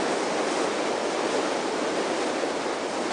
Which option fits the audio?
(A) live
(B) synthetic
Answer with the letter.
A